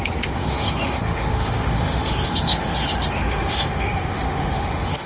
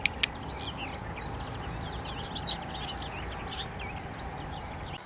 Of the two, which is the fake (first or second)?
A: first